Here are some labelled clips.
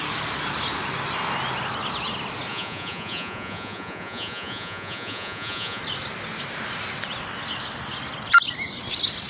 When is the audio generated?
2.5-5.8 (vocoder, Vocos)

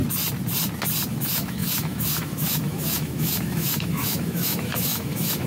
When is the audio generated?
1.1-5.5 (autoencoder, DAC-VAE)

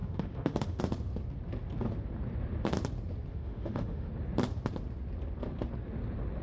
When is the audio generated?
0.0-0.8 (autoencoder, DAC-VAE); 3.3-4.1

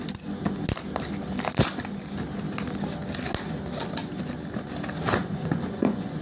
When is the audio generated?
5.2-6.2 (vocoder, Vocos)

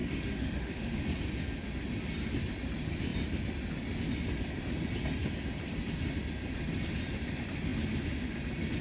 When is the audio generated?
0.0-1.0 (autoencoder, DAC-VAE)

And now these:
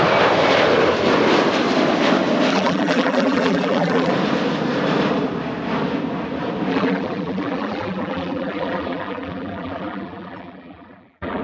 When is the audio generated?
2.5-4.1 (vocoder, BigVGAN v2); 6.7-11.4

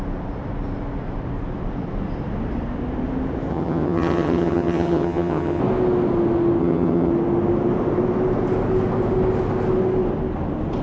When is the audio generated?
3.5-5.6 (vocoder, HiFi-GAN); 6.6-7.1

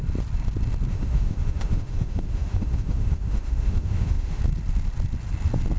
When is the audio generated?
0.9-4.4 (autoencoder, DAC-VAE)